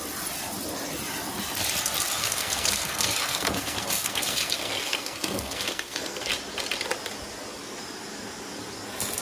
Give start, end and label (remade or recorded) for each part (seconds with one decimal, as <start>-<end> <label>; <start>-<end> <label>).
0.0-2.2 recorded; 2.2-6.3 remade; 6.3-9.2 recorded